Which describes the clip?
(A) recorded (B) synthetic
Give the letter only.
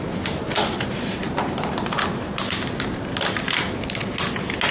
A